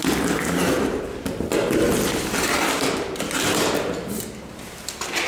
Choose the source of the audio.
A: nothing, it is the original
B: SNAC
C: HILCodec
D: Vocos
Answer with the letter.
A